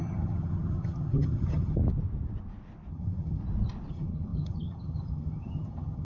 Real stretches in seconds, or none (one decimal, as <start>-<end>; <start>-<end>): 1.8-2.9; 3.4-3.9